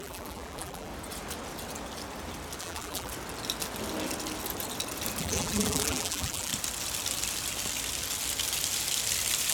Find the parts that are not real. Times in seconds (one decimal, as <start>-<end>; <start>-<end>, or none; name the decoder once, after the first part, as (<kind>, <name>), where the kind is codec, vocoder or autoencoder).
0.0-0.9 (vocoder, BigVGAN v2); 2.6-3.1; 5.2-6.5